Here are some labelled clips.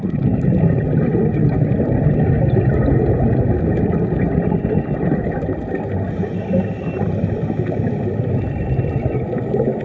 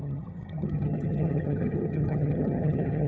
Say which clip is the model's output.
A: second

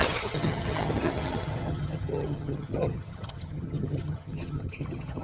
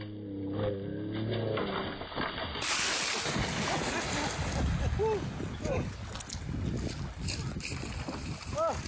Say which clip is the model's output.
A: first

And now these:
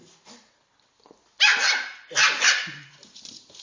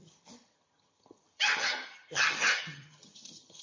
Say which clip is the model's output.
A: second